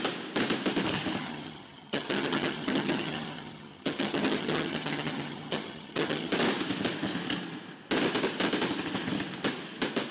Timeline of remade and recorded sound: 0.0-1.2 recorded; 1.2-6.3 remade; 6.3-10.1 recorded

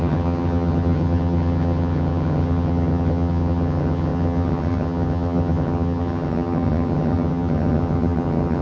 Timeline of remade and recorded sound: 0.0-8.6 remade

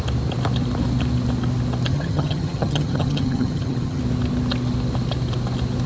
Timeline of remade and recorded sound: 0.0-1.9 recorded; 1.9-4.0 remade; 4.0-5.9 recorded

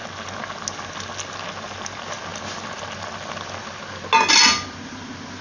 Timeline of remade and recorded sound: 0.0-5.4 recorded

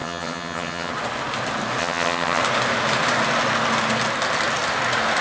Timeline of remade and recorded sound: 0.0-0.9 remade; 0.9-1.8 recorded; 1.8-2.4 remade; 2.4-5.2 recorded

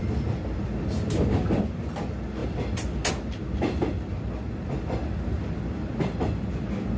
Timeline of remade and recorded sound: 0.0-7.0 recorded

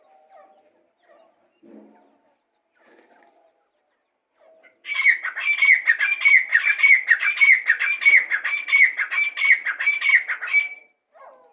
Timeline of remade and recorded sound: 0.0-11.5 recorded

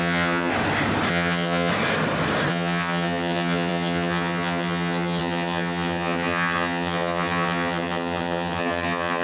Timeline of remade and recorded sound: 0.0-0.5 remade; 0.5-1.1 recorded; 1.1-1.7 remade; 1.7-2.5 recorded; 2.5-9.2 remade